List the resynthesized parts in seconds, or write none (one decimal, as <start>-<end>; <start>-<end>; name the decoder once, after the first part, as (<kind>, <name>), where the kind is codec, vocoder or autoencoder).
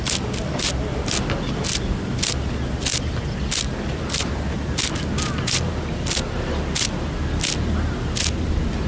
none